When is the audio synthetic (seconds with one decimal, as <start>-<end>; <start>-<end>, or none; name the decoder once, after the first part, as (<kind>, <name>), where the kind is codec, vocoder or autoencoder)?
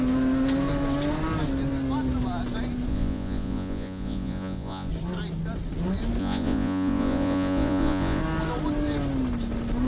2.9-4.9 (vocoder, Vocos); 6.2-8.2